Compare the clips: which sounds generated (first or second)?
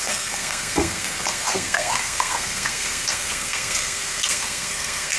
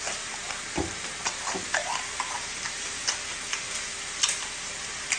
first